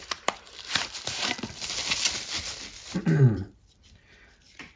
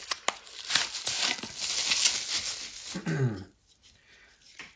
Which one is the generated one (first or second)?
first